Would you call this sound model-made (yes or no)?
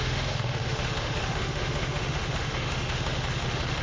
yes